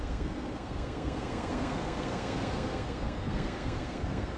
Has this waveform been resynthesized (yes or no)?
yes